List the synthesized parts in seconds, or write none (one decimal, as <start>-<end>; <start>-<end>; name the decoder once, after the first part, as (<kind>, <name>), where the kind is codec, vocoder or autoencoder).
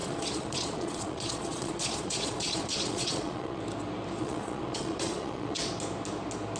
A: 0.0-3.6 (vocoder, Vocos); 4.2-5.7